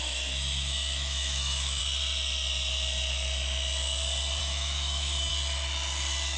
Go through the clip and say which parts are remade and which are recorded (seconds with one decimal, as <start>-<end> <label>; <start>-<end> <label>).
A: 0.0-1.8 remade; 1.8-4.4 recorded; 4.4-5.3 remade; 5.3-6.4 recorded